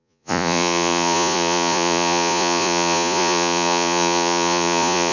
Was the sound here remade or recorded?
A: remade